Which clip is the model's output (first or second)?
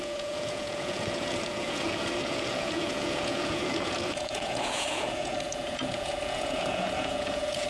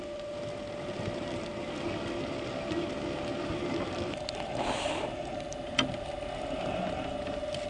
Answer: first